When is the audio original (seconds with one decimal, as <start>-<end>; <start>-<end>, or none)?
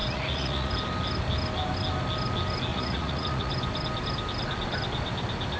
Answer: 0.7-2.7; 3.5-5.6